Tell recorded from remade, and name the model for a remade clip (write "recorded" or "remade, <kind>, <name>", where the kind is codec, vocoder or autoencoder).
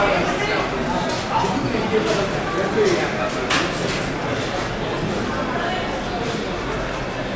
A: recorded